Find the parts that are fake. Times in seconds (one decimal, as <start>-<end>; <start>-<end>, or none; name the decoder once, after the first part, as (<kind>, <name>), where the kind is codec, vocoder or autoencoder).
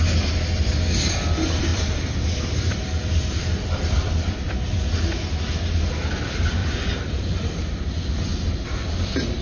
1.7-4.8 (vocoder, BigVGAN v2); 6.6-7.9; 8.8-9.4